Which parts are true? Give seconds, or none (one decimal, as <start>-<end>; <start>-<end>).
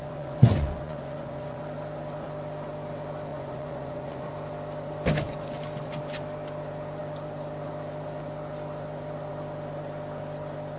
1.6-3.3; 4.3-10.8